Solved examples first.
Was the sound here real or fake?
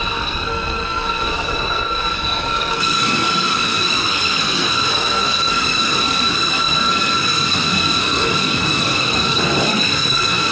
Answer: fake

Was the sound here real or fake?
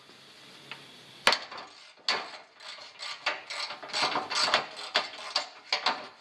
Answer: real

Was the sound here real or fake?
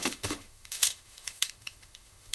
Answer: fake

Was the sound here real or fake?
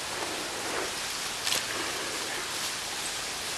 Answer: real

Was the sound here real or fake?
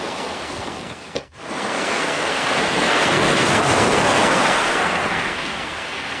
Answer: fake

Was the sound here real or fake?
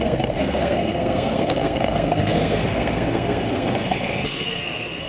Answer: fake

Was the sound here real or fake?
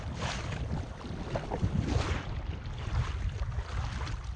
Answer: real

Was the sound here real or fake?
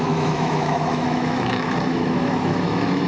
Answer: fake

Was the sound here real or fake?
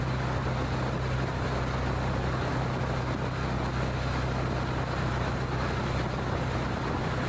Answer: real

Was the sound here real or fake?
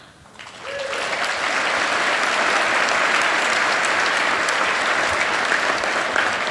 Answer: real